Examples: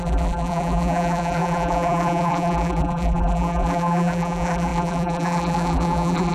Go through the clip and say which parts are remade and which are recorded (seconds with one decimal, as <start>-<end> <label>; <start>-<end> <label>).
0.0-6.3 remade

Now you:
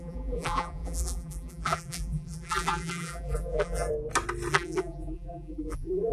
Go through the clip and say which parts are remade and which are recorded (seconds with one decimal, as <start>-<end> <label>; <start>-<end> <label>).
0.0-3.9 remade; 3.9-4.5 recorded; 4.5-6.1 remade

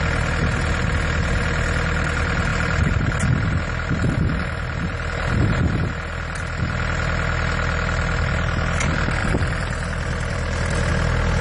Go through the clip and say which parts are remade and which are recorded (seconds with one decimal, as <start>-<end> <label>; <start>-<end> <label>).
0.0-9.2 recorded; 9.2-10.9 remade; 10.9-11.4 recorded

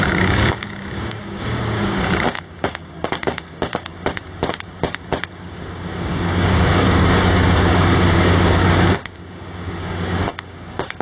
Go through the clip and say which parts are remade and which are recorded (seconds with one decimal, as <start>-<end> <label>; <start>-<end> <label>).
0.0-3.9 remade; 3.9-5.3 recorded; 5.3-11.0 remade

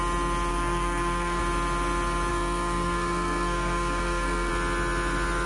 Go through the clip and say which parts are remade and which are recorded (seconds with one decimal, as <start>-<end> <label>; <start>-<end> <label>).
0.0-0.5 recorded; 0.5-1.4 remade; 1.4-2.3 recorded; 2.3-4.5 remade; 4.5-5.5 recorded

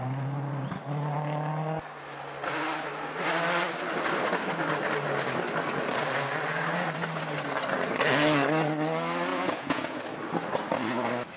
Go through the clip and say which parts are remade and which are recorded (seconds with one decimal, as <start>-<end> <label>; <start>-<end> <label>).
0.0-9.3 recorded; 9.3-10.0 remade; 10.0-11.4 recorded

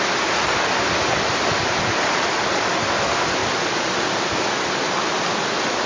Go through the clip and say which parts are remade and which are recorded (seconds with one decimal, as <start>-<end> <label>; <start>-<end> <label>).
0.0-5.9 recorded

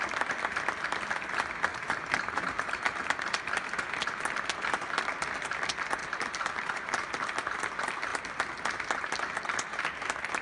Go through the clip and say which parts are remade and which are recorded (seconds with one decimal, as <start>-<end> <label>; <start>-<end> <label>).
0.0-1.7 recorded; 1.7-3.7 remade; 3.7-6.0 recorded; 6.0-7.1 remade; 7.1-10.4 recorded